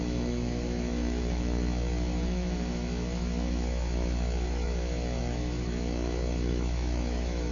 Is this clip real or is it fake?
fake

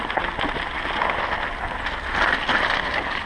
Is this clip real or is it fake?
real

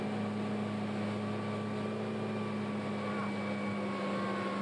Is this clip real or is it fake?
real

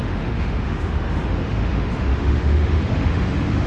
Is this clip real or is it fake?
fake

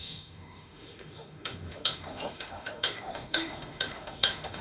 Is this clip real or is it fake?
fake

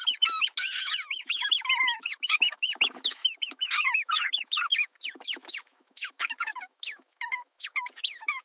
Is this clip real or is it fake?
fake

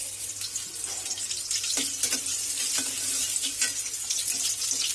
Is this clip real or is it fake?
real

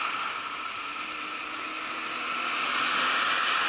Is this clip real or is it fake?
real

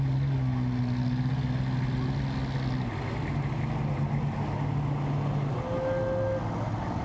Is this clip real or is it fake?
real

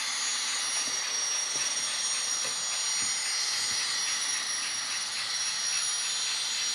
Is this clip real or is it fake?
real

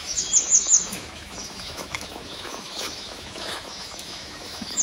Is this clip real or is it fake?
fake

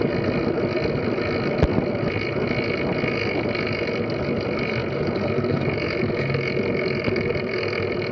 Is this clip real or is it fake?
real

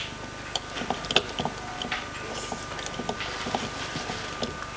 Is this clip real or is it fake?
real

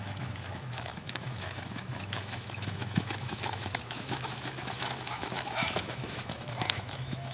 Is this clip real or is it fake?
fake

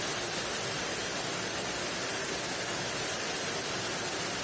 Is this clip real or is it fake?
real